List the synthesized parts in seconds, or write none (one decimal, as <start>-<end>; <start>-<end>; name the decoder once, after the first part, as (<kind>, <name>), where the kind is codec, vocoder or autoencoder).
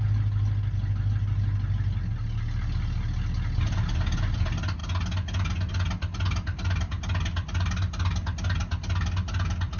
none